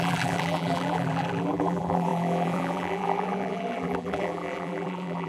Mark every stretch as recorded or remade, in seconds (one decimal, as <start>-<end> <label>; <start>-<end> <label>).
0.0-5.3 remade